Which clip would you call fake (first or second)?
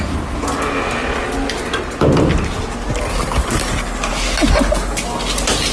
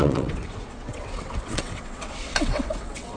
second